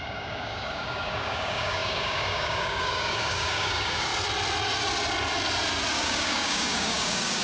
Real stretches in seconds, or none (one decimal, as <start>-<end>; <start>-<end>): 4.1-5.9